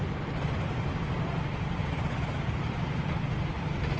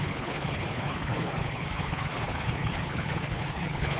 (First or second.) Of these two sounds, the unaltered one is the first